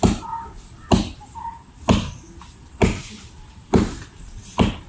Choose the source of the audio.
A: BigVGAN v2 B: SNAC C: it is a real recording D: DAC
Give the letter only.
C